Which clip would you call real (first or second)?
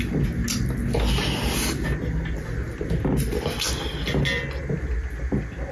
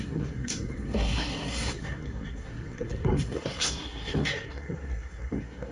first